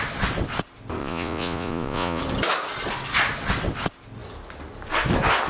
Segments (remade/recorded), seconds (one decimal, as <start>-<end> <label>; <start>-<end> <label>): 0.0-1.0 recorded; 1.0-2.2 remade; 2.2-5.5 recorded